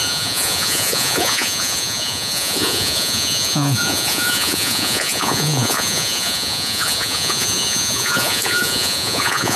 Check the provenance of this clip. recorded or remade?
remade